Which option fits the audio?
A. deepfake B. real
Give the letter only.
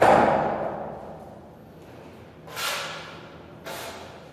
B